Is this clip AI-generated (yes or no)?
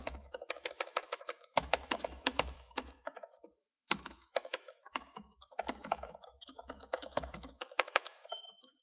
yes